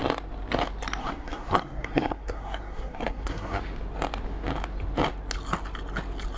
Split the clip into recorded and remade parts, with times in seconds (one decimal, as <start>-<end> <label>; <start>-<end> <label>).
0.0-1.0 recorded; 1.0-3.6 remade; 3.6-6.4 recorded